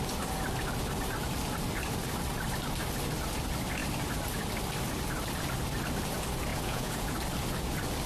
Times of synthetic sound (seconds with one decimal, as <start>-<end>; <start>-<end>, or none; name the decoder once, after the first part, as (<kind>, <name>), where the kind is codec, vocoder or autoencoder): 6.5-7.1 (vocoder, Vocos)